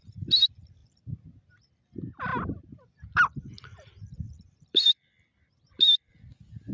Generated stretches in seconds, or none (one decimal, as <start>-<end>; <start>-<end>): 0.8-1.6; 2.3-6.3